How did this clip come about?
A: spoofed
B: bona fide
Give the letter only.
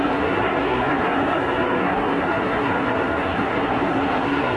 A